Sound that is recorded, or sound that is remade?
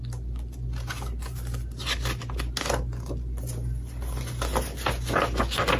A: recorded